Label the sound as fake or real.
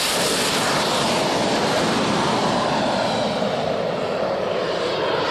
fake